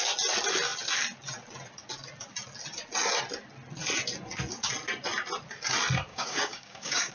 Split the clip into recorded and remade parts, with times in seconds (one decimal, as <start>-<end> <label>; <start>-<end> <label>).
0.0-6.1 recorded; 6.1-7.1 remade